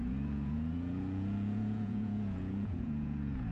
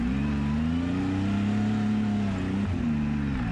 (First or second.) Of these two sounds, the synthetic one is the first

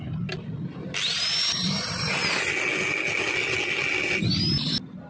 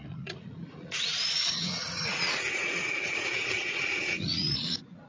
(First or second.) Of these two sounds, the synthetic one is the second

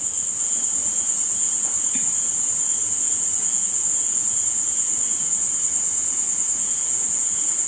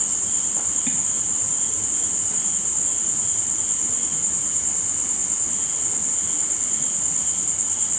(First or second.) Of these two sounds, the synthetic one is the first